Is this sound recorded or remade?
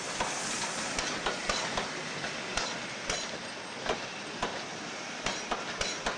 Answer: recorded